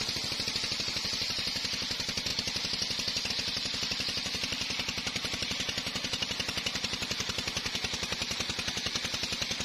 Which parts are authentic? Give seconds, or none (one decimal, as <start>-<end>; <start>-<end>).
0.0-9.6